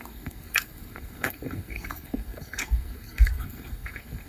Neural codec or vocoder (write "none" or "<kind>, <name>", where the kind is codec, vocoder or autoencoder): codec, SNAC